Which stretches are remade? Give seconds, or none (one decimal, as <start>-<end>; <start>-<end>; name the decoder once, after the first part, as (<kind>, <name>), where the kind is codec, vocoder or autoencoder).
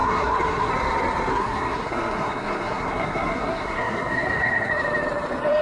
0.0-0.7 (codec, SNAC); 1.3-4.7